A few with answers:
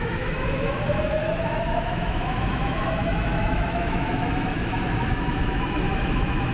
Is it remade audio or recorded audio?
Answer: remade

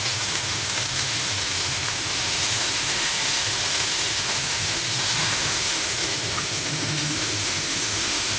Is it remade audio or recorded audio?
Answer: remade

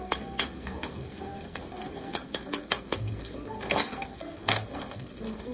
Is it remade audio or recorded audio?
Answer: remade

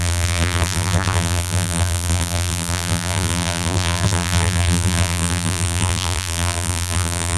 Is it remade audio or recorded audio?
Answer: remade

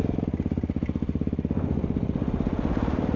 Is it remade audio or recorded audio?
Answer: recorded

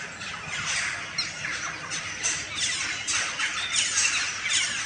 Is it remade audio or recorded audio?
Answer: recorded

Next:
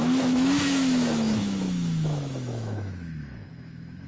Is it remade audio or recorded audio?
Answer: remade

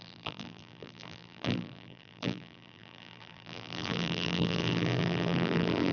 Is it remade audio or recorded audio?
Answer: remade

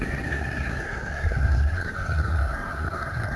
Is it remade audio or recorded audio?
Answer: remade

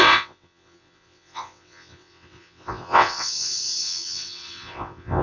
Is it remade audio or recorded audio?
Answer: remade